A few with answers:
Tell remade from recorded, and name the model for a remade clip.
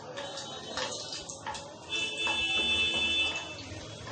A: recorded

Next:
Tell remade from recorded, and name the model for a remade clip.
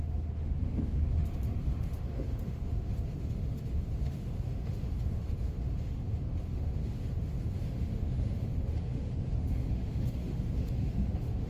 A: remade, autoencoder, DAC-VAE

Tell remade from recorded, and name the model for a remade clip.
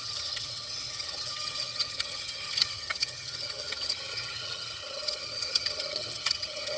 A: remade, vocoder, HiFi-GAN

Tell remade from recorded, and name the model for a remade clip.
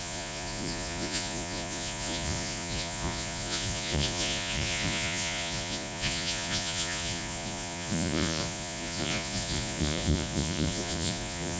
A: remade, vocoder, Vocos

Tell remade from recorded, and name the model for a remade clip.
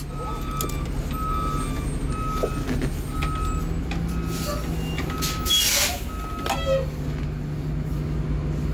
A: recorded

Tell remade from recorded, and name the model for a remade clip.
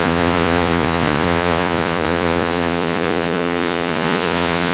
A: remade, vocoder, Vocos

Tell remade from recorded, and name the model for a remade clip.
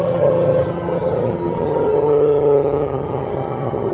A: remade, vocoder, HiFi-GAN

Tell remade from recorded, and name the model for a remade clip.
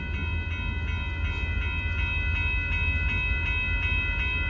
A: recorded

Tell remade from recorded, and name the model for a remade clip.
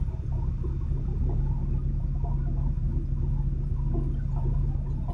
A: recorded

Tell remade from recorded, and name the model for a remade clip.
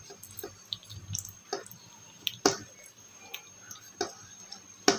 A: recorded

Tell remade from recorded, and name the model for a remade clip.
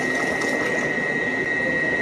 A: recorded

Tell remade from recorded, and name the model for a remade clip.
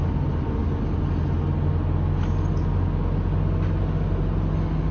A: recorded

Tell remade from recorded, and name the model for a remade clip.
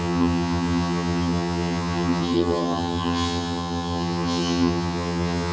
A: remade, vocoder, HiFi-GAN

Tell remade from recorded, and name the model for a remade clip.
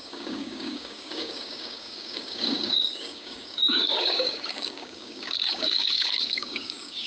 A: remade, codec, DAC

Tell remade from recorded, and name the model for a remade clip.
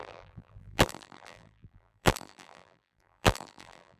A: remade, vocoder, BigVGAN v2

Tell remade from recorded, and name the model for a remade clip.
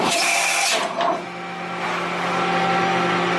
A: recorded